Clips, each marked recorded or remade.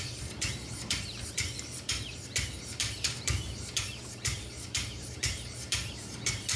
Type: remade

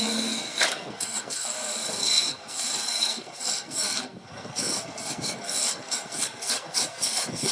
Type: remade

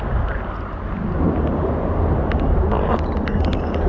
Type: recorded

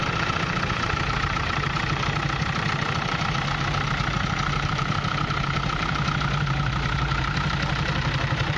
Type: remade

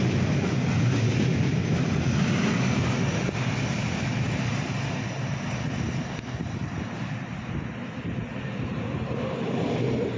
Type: recorded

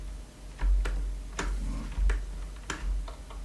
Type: recorded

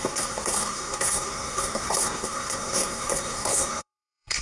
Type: remade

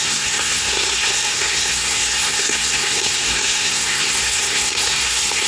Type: remade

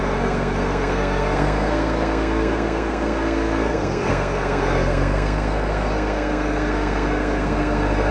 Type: remade